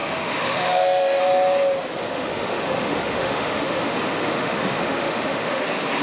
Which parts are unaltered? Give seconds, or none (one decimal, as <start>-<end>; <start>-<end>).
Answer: 1.2-2.0; 5.6-6.0